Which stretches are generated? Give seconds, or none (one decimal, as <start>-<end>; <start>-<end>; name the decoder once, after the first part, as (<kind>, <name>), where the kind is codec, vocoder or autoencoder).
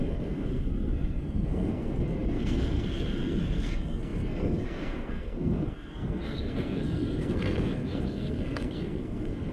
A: 0.0-9.5 (codec, SNAC)